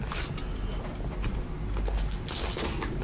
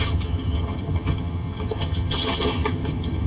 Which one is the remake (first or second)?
second